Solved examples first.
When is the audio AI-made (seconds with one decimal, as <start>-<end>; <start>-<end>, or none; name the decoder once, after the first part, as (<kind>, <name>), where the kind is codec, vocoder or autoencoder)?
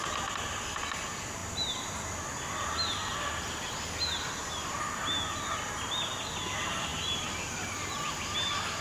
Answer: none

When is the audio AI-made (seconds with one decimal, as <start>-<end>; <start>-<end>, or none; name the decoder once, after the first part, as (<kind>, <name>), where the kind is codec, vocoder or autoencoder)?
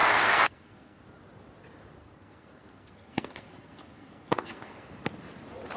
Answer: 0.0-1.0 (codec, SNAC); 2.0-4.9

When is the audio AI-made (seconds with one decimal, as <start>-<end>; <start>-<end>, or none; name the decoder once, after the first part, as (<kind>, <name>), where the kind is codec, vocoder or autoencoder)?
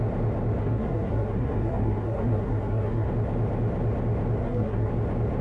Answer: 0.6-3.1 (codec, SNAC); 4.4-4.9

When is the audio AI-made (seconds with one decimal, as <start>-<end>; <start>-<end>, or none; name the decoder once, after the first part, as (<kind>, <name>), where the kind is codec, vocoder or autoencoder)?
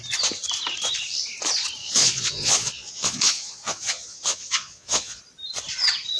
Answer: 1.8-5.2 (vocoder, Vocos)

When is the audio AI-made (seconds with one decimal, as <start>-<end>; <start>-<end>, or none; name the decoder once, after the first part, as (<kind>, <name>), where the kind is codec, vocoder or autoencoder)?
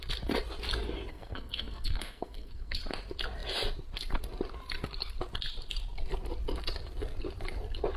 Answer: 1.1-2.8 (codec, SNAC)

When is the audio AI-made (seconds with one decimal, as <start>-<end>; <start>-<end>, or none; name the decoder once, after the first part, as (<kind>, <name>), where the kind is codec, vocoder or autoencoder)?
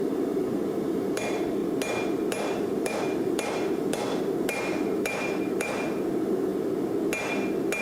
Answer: 0.0-1.6 (vocoder, BigVGAN v2); 2.3-6.5